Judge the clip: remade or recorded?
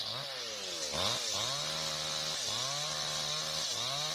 recorded